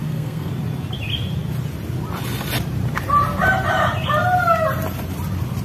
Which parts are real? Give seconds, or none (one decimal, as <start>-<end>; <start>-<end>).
0.5-5.6